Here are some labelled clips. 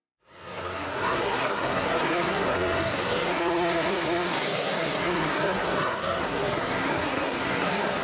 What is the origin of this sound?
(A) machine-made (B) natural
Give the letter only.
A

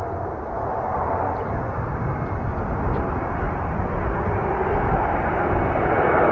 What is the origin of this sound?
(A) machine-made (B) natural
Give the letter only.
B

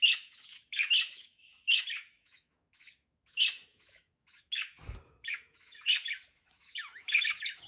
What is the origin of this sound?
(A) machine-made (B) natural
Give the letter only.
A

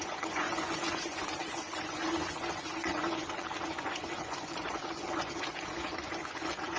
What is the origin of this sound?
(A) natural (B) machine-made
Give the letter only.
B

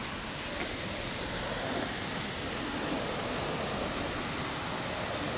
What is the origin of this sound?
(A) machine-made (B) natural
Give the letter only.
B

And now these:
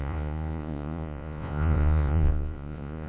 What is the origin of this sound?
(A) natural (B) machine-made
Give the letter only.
B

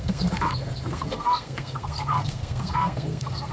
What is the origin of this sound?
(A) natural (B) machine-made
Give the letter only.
B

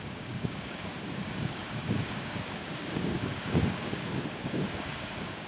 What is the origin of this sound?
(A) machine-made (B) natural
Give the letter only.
A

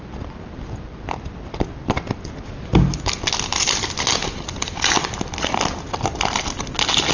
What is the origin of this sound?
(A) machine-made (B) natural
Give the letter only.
B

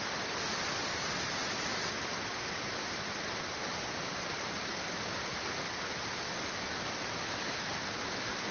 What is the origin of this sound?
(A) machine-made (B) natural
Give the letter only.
B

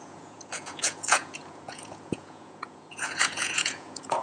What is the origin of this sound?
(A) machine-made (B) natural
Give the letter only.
A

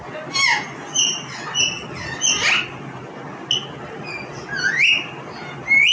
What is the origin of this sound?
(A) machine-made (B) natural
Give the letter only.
B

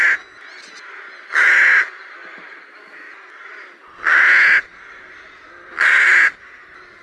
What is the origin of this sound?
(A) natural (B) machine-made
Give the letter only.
A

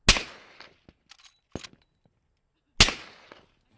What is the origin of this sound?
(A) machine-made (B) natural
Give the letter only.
B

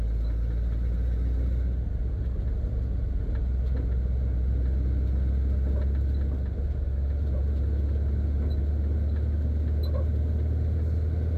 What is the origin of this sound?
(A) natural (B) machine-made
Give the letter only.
A